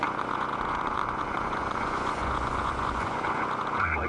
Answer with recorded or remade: remade